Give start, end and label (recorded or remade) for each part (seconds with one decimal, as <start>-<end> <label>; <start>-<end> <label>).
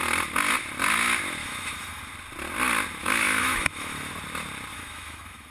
0.0-1.4 recorded; 1.4-2.0 remade; 2.0-3.0 recorded; 3.0-4.1 remade; 4.1-4.7 recorded; 4.7-5.5 remade